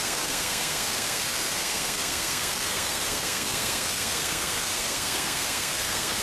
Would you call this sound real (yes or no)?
no